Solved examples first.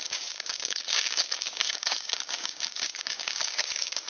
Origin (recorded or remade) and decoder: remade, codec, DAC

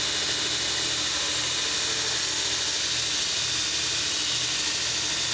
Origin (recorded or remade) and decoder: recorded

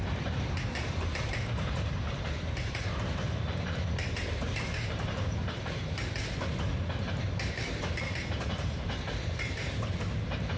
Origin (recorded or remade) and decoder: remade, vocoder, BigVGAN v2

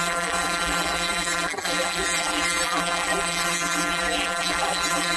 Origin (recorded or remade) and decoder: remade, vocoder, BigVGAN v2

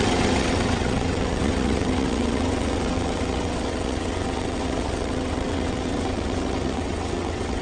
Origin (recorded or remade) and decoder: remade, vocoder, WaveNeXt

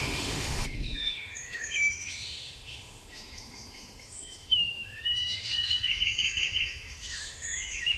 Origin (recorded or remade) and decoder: remade, autoencoder, DAC-VAE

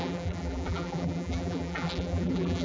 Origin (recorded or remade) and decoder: remade, vocoder, BigVGAN v2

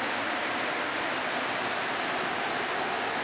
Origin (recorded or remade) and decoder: recorded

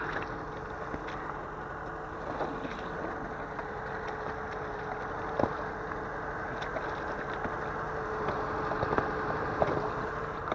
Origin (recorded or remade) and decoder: recorded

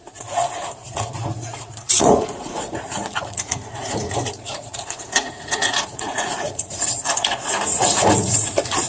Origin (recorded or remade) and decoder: remade, vocoder, Vocos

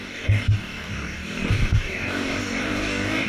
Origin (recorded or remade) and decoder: remade, codec, DAC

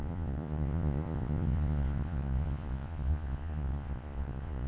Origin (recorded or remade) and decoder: remade, vocoder, Vocos